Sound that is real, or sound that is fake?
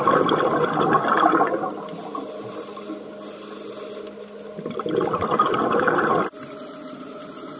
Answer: real